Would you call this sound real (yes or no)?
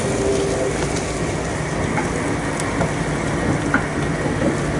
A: yes